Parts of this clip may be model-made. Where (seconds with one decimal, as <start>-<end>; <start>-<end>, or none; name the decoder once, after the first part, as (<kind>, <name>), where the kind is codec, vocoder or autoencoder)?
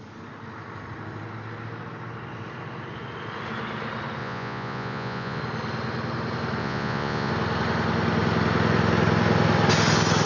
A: 4.2-5.4 (vocoder, Vocos); 6.6-7.3